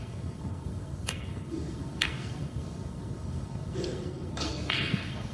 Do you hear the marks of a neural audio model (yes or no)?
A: yes